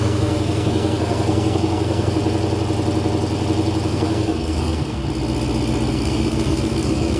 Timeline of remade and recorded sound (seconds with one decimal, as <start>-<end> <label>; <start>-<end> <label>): 0.0-2.2 remade; 2.2-3.9 recorded; 3.9-5.0 remade; 5.0-5.9 recorded; 5.9-7.2 remade